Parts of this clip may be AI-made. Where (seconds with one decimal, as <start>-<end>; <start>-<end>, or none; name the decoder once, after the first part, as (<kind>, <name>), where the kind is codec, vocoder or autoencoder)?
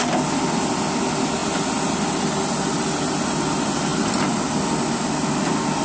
none